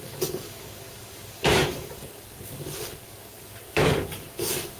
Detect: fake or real fake